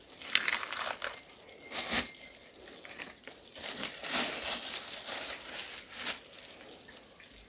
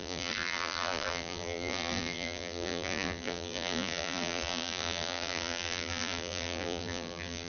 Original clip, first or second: first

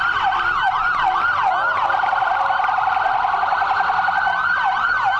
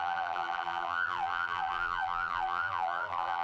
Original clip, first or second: first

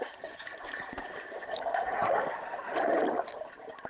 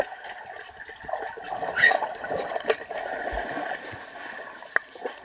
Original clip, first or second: second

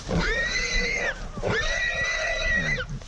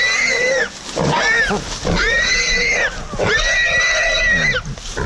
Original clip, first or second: second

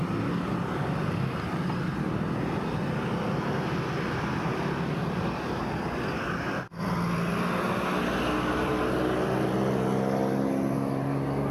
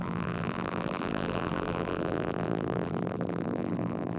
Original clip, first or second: first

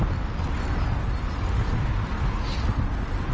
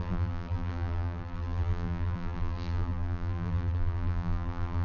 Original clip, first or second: first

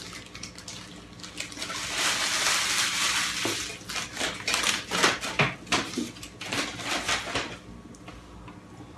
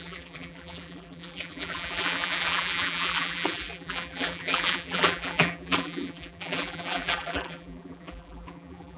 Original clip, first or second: first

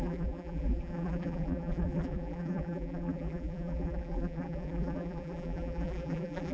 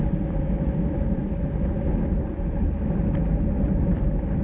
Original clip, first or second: second